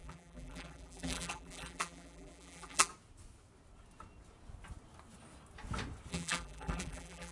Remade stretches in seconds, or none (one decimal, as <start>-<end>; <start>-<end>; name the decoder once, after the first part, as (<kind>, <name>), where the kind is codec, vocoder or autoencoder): 0.0-2.9 (vocoder, BigVGAN v2); 6.1-7.3